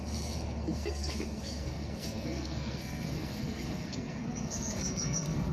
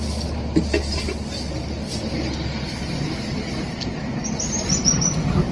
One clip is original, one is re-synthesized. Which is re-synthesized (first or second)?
first